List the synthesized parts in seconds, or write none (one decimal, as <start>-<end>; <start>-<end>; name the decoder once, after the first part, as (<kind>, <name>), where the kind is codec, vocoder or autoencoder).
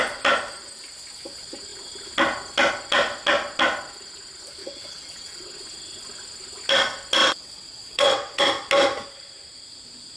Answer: 4.6-5.6 (vocoder, WaveNeXt); 7.2-8.4